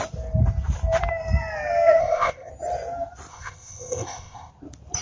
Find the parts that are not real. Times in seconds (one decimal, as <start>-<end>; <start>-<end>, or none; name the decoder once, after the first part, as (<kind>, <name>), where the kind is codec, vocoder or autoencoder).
2.0-2.5 (codec, ZipCodec); 3.3-4.5

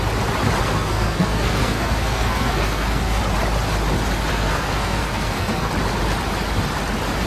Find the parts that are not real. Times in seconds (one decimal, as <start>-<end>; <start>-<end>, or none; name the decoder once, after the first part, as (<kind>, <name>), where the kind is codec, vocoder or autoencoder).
0.6-3.2 (codec, SNAC); 4.3-5.7

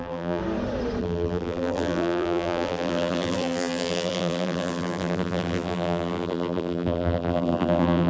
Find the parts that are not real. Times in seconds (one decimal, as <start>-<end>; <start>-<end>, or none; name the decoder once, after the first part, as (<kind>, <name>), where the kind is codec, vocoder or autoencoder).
0.0-0.4 (vocoder, BigVGAN v2); 1.0-8.1